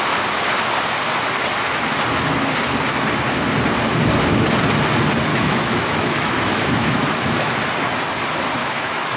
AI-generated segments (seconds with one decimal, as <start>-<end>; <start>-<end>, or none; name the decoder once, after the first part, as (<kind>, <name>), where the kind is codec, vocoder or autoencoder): 5.3-7.6 (autoencoder, DAC-VAE); 8.6-9.2